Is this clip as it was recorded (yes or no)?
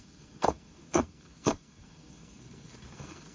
no